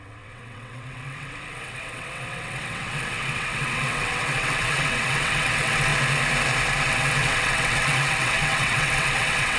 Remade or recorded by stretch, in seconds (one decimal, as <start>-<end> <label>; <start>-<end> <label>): 0.0-5.9 remade; 5.9-6.8 recorded; 6.8-9.6 remade